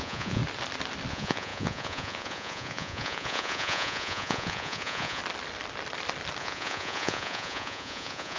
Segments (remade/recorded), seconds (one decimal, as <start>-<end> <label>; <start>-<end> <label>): 0.0-0.4 remade; 0.4-1.1 recorded; 1.1-5.2 remade; 5.2-6.4 recorded; 6.4-8.4 remade

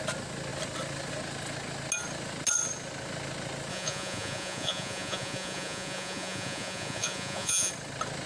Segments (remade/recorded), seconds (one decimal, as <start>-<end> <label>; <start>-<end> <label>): 0.0-3.7 recorded; 3.7-7.7 remade; 7.7-8.3 recorded

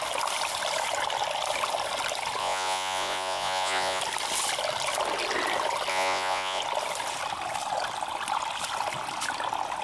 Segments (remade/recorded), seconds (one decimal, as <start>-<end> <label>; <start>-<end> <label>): 0.0-2.4 recorded; 2.4-4.0 remade; 4.0-5.9 recorded; 5.9-6.6 remade; 6.6-9.8 recorded

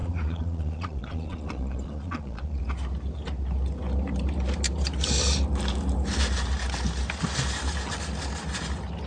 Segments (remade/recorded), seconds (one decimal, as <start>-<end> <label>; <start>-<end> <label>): 0.0-2.6 remade; 2.6-9.1 recorded

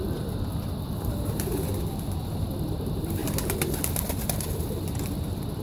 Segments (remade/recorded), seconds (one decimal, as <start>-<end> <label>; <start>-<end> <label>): 0.0-5.6 recorded

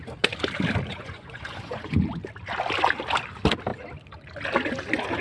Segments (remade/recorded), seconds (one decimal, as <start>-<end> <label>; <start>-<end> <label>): 0.0-0.9 recorded; 0.9-2.0 remade; 2.0-5.2 recorded